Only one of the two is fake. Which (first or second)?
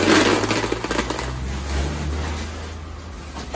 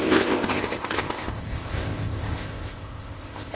second